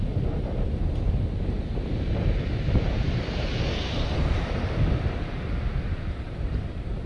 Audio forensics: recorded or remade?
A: remade